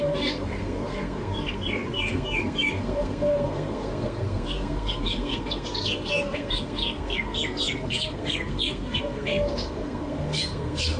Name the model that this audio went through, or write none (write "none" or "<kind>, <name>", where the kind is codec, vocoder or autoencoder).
codec, SNAC